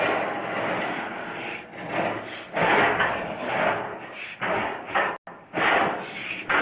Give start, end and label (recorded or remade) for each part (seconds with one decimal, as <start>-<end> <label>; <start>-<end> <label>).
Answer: 0.0-2.7 recorded; 2.7-3.5 remade; 3.5-3.9 recorded; 3.9-5.1 remade; 5.1-6.6 recorded